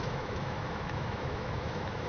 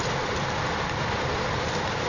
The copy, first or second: first